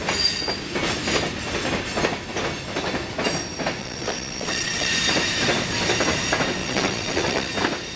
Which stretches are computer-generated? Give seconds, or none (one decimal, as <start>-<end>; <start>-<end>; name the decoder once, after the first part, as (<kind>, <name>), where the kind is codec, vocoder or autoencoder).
3.8-4.9 (vocoder, WaveNeXt); 6.6-7.5